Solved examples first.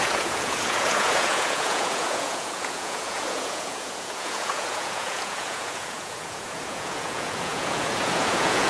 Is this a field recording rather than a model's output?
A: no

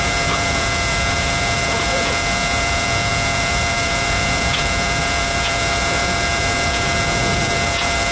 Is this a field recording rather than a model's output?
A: no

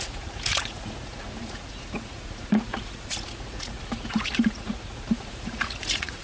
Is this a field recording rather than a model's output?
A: no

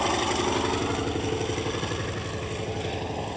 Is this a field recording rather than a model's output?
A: yes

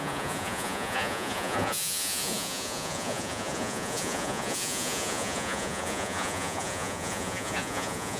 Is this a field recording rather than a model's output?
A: no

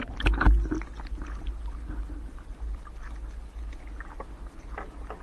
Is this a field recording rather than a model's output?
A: yes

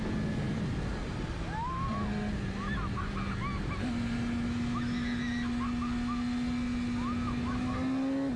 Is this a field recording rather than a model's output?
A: yes